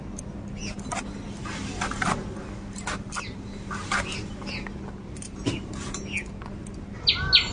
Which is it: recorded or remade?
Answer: recorded